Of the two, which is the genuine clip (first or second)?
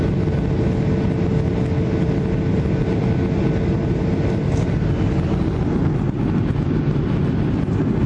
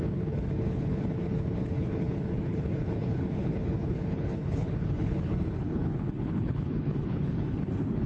first